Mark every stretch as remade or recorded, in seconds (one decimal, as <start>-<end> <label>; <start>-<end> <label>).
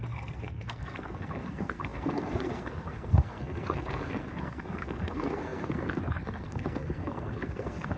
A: 0.0-8.0 remade